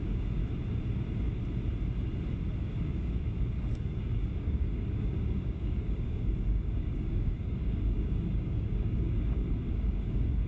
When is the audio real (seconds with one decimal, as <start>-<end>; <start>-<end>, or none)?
0.4-2.6